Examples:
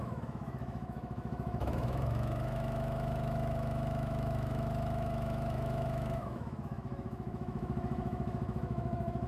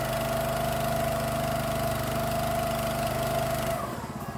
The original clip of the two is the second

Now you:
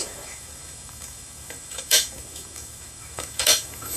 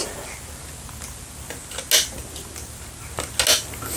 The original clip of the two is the second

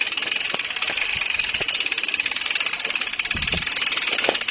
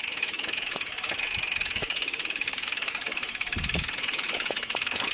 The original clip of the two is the first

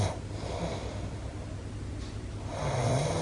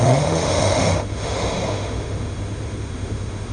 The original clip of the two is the first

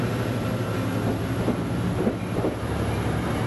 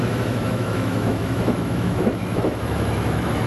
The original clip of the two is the first